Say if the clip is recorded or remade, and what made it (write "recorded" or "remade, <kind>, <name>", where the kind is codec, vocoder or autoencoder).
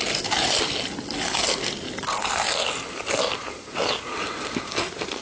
recorded